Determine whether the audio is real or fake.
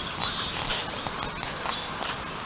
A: real